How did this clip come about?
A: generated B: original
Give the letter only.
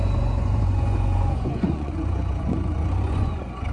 A